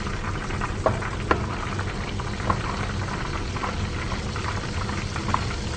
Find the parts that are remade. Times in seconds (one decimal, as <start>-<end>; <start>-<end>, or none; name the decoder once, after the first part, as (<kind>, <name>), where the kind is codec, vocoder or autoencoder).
none